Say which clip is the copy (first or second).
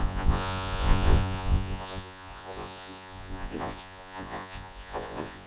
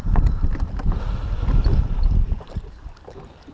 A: first